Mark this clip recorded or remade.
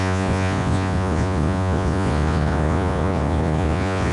remade